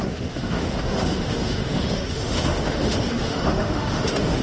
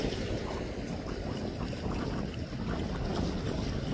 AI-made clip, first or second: first